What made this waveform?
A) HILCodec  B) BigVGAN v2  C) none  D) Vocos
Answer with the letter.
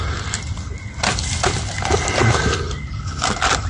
C